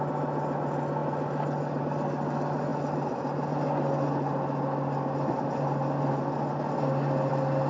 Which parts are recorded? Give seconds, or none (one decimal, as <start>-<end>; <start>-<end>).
0.0-7.7